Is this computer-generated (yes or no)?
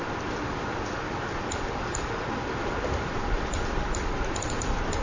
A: yes